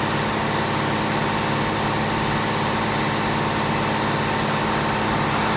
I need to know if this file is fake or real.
real